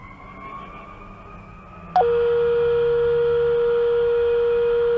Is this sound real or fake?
real